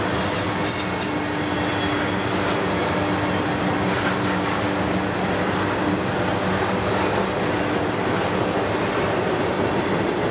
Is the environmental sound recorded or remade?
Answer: recorded